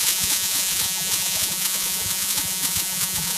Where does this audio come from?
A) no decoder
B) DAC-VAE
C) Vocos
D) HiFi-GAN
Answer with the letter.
C